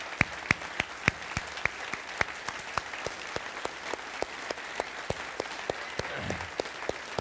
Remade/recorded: recorded